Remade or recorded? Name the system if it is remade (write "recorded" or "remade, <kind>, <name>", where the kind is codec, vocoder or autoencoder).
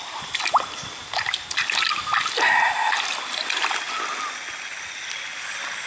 recorded